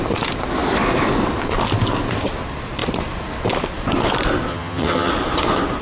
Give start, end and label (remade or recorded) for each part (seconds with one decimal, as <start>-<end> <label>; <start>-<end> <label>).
0.0-4.5 recorded; 4.5-5.1 remade; 5.1-5.8 recorded

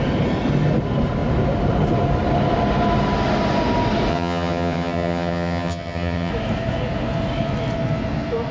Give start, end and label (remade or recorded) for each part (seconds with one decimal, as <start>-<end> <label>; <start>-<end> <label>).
0.0-4.1 recorded; 4.1-6.3 remade; 6.3-8.5 recorded

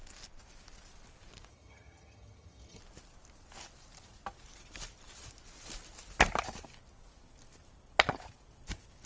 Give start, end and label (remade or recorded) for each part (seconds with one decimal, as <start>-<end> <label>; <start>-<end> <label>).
0.0-1.5 recorded; 1.5-2.8 remade; 2.8-9.1 recorded

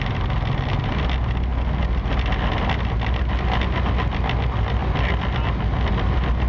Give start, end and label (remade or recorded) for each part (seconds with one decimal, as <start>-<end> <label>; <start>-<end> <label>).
0.0-6.5 recorded

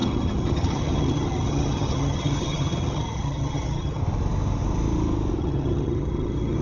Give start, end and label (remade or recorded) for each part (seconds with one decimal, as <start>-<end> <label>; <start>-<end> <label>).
0.0-4.0 remade; 4.0-5.4 recorded; 5.4-6.6 remade

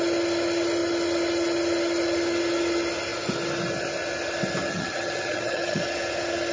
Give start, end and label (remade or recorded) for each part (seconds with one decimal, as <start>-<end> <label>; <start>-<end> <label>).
0.0-4.7 recorded; 4.7-5.8 remade; 5.8-6.5 recorded

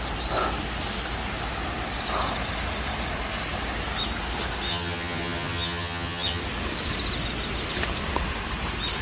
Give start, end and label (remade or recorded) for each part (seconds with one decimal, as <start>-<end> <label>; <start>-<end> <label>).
0.0-4.7 recorded; 4.7-6.4 remade; 6.4-9.0 recorded

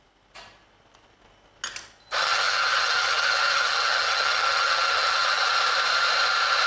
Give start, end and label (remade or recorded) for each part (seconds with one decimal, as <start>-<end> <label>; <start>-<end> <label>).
0.0-2.2 recorded; 2.2-5.5 remade; 5.5-6.7 recorded